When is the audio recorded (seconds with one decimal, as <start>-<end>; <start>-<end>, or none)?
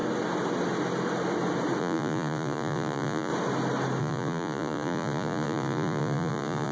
0.0-1.8; 3.3-4.0